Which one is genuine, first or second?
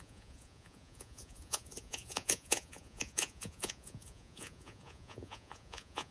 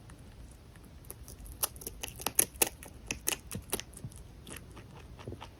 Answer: second